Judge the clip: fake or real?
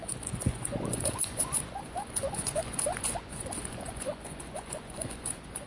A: fake